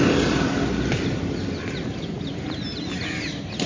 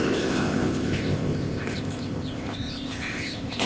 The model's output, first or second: second